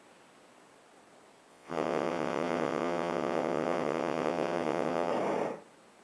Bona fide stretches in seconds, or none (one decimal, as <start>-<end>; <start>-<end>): 0.0-1.5; 5.1-6.0

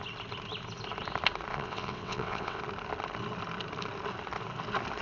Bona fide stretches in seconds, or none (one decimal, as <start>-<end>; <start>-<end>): 0.0-1.5; 2.6-5.0

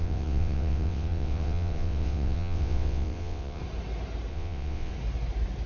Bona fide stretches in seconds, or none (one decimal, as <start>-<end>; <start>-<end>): 3.6-4.3; 4.9-5.7